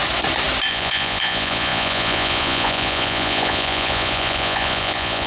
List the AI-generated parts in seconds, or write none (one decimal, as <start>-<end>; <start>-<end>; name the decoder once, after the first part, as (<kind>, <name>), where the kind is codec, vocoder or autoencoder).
0.7-5.3 (vocoder, Vocos)

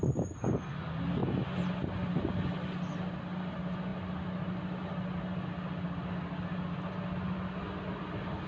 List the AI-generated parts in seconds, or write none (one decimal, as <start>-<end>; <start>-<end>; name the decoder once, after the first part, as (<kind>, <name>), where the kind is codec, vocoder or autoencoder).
none

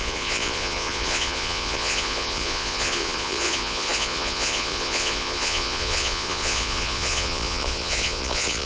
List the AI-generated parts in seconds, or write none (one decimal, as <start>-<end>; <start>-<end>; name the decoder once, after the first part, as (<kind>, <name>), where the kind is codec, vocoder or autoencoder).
0.0-8.7 (vocoder, Vocos)